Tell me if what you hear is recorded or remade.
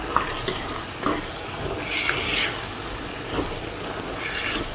recorded